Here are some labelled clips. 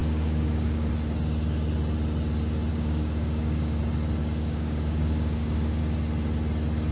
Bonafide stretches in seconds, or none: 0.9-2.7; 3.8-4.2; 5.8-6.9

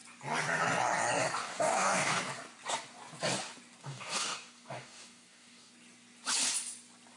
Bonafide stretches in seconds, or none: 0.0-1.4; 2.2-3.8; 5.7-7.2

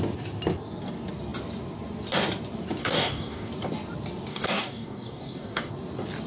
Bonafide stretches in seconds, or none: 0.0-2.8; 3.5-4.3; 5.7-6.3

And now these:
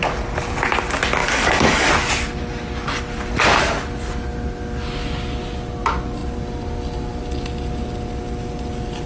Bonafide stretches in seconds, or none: 0.0-1.2; 1.9-9.1